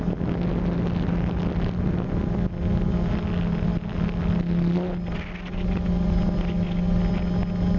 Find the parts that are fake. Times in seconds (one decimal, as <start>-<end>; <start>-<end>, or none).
none